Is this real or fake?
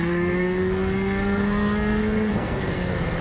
fake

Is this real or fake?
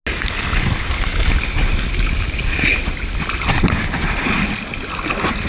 real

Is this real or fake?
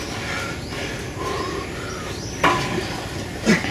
real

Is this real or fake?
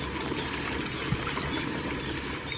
fake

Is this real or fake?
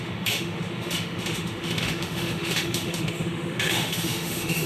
fake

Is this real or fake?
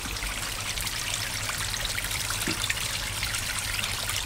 fake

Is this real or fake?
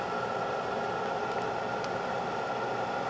real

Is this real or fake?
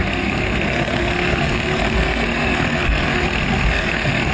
fake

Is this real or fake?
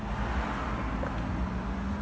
real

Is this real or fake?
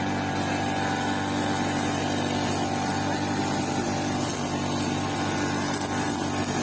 real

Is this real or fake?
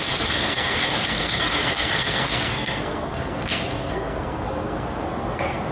fake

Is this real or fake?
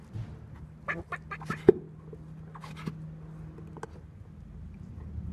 real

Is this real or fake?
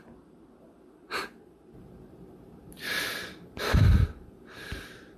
fake